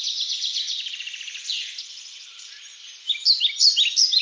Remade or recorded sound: recorded